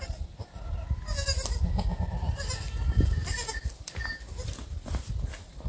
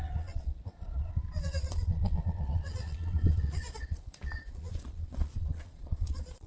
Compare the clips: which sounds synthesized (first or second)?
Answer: second